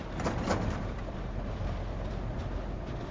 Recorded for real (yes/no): no